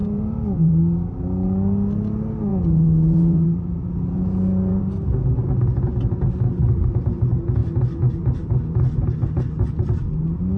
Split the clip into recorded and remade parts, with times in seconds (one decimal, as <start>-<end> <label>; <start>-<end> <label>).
0.0-0.7 remade; 0.7-2.5 recorded; 2.5-4.8 remade; 4.8-10.6 recorded